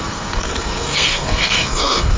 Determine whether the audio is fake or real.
fake